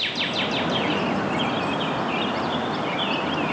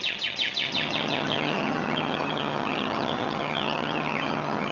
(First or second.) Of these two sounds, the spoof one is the second